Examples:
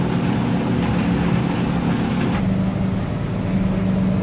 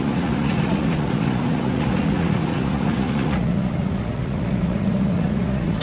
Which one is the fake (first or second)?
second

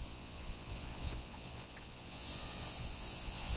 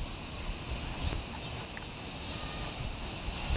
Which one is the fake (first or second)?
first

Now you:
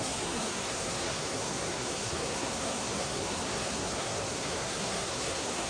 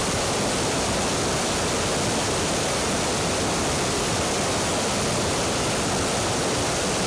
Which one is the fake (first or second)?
first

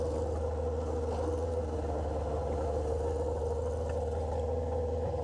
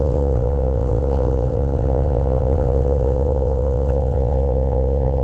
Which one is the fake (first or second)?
second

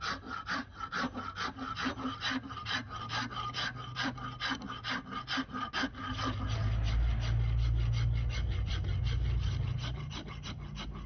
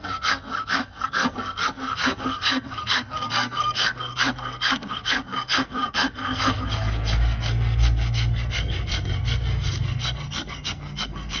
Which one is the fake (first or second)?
second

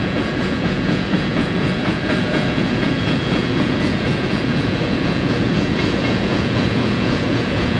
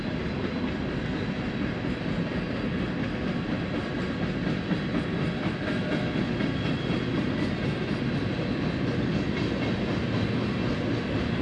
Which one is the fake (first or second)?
first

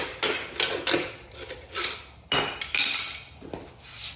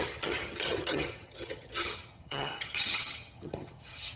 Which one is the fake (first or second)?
second